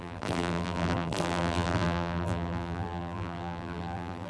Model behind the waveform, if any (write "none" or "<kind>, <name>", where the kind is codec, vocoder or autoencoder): vocoder, BigVGAN v2